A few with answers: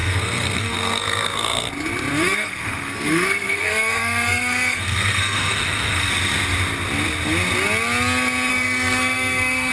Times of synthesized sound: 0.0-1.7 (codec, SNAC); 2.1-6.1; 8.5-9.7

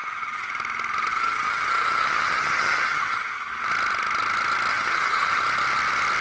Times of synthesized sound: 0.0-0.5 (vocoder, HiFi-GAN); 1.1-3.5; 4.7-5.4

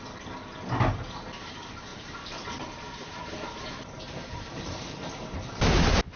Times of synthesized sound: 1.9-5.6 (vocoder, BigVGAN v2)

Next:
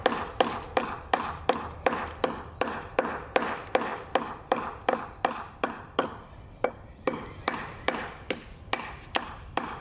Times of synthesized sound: none

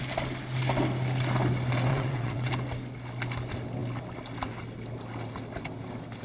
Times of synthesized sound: 1.9-2.5 (vocoder, WaveNeXt)

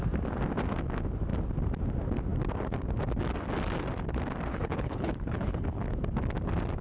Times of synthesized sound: 4.5-5.8 (codec, HILCodec)